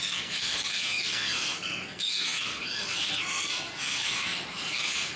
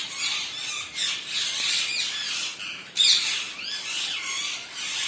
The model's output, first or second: first